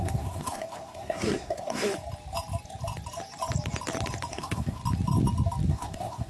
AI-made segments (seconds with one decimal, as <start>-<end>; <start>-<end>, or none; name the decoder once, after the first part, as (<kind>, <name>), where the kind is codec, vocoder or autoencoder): 0.0-1.9 (codec, SNAC); 4.3-4.8; 5.7-6.3